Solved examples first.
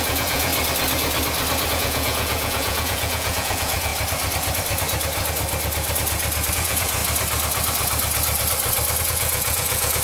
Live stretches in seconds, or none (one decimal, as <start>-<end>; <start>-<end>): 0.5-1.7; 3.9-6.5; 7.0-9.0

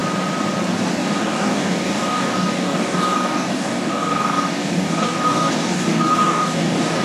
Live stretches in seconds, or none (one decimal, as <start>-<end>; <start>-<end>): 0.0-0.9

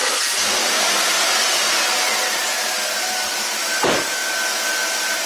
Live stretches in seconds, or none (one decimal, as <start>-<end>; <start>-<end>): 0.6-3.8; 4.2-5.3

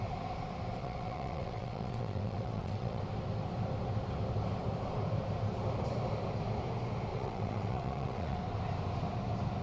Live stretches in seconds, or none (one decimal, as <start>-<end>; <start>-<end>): 0.0-0.8; 3.0-7.1; 8.4-9.6

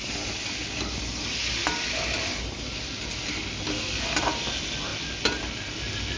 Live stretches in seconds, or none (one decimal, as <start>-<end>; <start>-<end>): 0.0-6.2

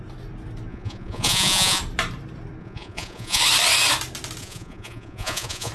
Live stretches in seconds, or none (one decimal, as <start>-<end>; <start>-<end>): 0.0-0.7; 1.8-2.6; 3.4-4.4

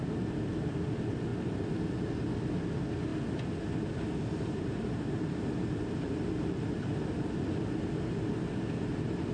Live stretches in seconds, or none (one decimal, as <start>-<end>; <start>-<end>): 0.0-9.3

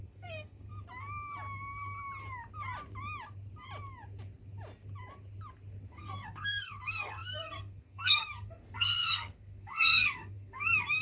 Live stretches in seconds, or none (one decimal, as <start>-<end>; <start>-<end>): 0.7-5.9